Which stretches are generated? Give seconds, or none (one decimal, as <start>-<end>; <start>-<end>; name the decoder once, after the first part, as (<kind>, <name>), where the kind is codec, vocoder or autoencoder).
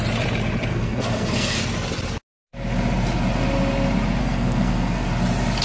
0.7-1.6 (codec, SNAC); 4.2-5.1